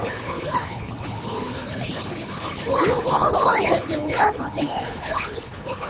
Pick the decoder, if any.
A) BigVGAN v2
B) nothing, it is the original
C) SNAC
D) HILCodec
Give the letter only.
D